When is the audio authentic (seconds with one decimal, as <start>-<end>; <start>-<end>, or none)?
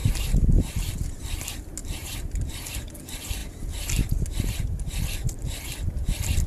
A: 0.9-1.8; 2.9-6.5